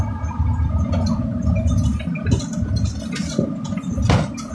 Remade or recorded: recorded